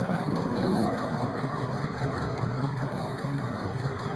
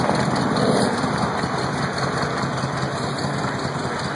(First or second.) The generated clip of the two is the first